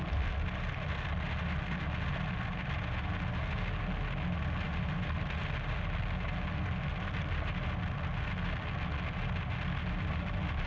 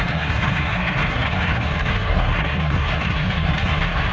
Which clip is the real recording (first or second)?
first